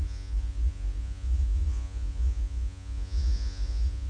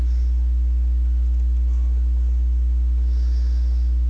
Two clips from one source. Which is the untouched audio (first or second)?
second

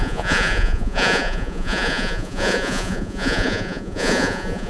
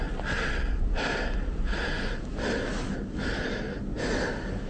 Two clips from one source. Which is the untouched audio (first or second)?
second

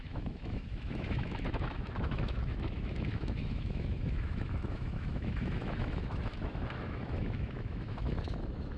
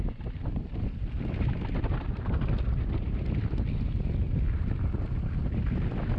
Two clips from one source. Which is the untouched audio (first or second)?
second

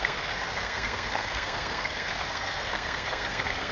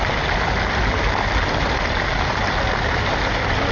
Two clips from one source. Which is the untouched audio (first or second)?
second